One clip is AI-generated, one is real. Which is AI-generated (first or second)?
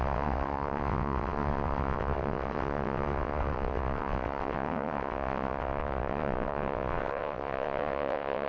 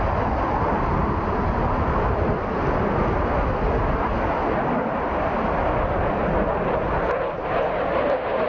first